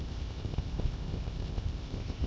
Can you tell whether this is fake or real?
fake